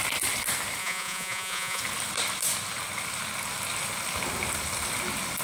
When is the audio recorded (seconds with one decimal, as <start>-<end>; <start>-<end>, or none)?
0.0-0.8; 1.8-5.4